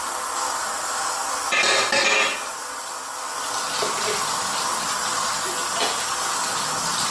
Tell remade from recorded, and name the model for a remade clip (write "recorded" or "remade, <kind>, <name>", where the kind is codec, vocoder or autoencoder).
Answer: recorded